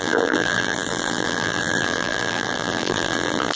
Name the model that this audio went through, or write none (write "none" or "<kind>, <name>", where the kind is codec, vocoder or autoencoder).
vocoder, BigVGAN v2